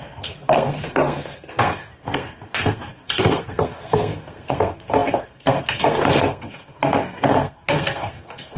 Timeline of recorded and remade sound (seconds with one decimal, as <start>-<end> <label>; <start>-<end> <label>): 0.0-8.6 remade